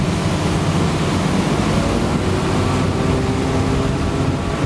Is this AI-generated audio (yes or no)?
no